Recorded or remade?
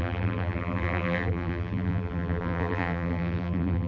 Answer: remade